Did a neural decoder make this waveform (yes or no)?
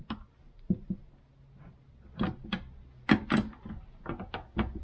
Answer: no